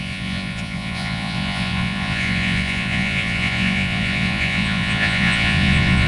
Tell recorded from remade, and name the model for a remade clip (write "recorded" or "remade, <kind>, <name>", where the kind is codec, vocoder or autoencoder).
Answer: remade, vocoder, Vocos